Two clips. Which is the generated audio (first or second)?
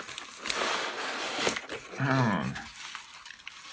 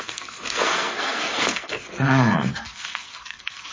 second